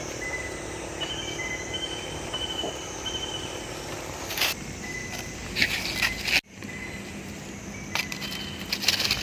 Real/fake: real